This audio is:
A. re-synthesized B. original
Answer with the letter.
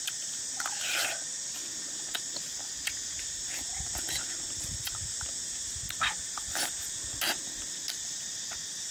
B